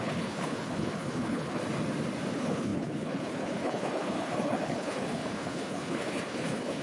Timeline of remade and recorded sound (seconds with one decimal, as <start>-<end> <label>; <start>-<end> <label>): 0.0-1.6 remade; 1.6-2.3 recorded; 2.3-6.8 remade